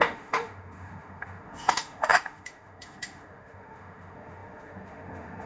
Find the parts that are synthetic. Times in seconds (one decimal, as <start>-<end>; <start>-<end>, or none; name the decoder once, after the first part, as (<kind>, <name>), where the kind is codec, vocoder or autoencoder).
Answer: 0.0-5.5 (autoencoder, DAC-VAE)